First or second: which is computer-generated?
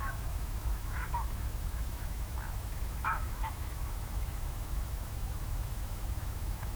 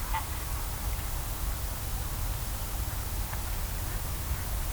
first